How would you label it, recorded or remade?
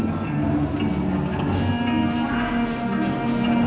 recorded